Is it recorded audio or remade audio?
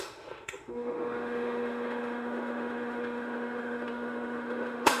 remade